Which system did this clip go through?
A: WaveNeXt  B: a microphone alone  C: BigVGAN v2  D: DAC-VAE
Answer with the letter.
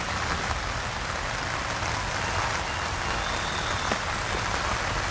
B